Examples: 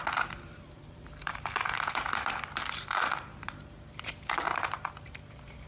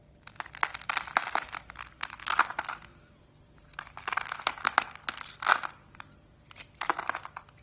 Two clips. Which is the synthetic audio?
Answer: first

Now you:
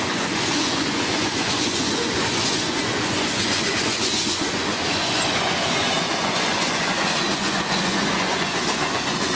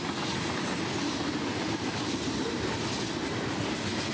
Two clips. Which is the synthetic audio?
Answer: first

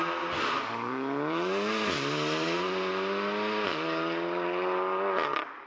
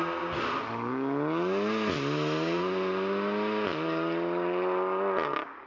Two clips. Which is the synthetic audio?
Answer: first